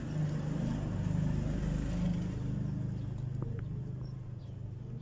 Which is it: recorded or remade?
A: recorded